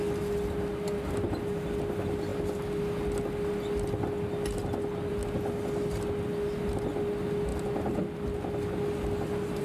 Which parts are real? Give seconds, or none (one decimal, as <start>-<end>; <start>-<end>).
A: 0.0-9.6

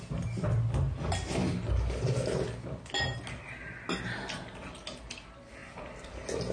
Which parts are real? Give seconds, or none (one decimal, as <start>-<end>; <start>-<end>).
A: 0.0-6.5

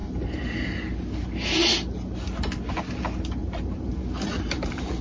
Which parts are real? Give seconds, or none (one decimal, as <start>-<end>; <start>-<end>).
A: 0.0-3.4; 4.0-5.0

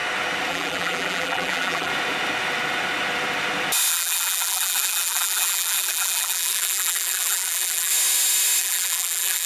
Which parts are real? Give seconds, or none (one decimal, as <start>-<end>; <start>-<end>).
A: 0.0-0.5; 1.9-3.9; 7.9-8.6

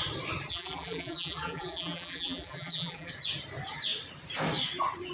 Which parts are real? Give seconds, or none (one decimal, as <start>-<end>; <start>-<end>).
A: 0.0-0.5; 3.1-5.1

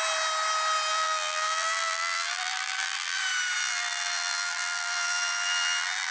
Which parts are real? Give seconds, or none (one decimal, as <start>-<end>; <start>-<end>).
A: 0.0-0.9; 3.2-3.6

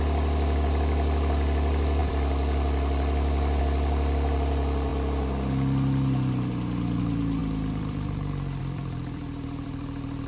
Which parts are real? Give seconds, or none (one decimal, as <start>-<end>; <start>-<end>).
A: 4.9-7.0

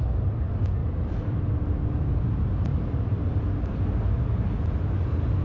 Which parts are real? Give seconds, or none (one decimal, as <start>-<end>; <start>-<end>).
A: 0.0-0.8; 1.4-1.8; 2.3-2.7; 3.4-5.4